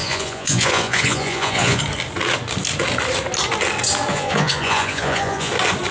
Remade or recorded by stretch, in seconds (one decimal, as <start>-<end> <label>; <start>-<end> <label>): 0.0-1.8 remade; 1.8-4.1 recorded; 4.1-5.5 remade; 5.5-5.9 recorded

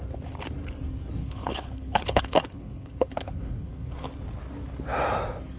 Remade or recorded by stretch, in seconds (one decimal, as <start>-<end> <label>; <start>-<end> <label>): 0.0-1.2 recorded; 1.2-4.1 remade; 4.1-5.6 recorded

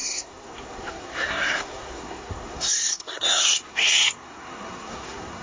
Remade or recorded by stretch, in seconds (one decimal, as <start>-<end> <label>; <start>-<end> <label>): 0.0-5.4 remade

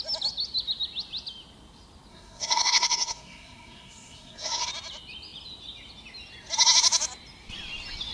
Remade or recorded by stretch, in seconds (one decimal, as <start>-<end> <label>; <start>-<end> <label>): 0.0-2.1 recorded; 2.1-4.7 remade; 4.7-8.1 recorded